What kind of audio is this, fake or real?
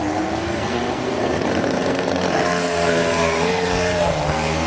fake